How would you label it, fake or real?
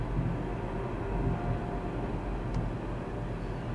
real